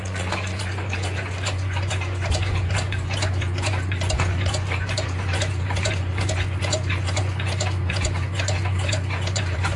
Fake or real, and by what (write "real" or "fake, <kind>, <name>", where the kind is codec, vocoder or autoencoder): fake, vocoder, Vocos